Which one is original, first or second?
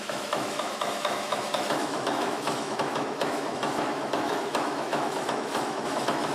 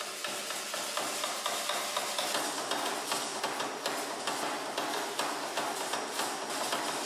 second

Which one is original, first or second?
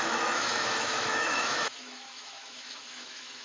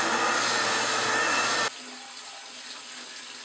second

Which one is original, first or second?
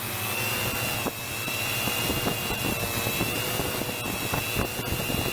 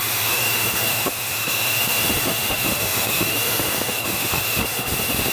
first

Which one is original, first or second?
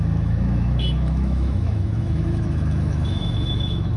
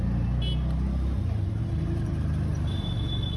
second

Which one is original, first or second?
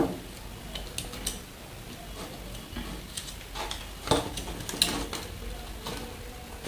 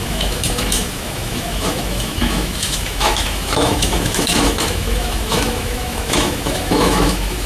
first